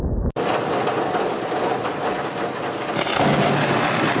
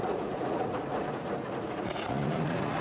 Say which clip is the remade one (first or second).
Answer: second